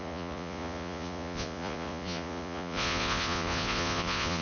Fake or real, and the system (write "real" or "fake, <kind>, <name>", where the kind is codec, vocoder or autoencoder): fake, vocoder, Vocos